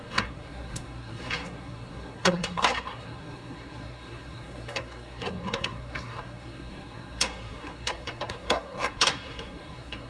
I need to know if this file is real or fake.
fake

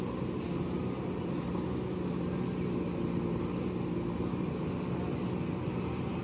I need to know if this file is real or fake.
real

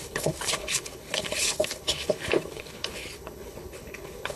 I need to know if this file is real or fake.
fake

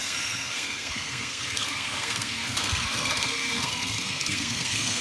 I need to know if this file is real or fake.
fake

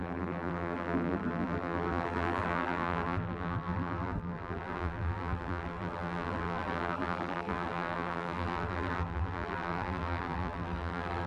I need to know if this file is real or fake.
fake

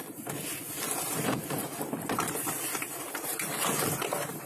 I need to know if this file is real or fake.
fake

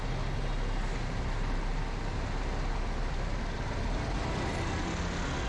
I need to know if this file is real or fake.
real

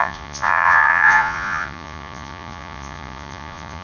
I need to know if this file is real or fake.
fake